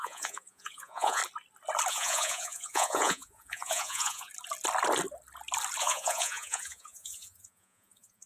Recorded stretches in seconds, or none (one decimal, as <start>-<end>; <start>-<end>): 1.2-1.9; 4.3-5.8